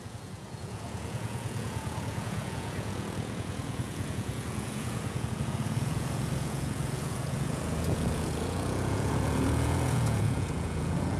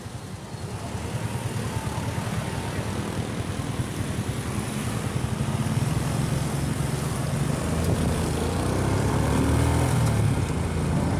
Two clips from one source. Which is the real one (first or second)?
second